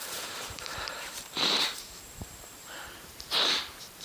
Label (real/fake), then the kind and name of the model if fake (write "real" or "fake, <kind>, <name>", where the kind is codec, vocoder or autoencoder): fake, vocoder, BigVGAN v2